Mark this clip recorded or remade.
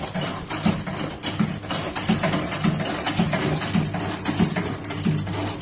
recorded